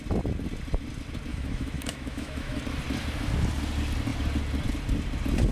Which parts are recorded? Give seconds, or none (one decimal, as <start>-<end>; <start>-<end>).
0.0-1.3; 2.6-5.5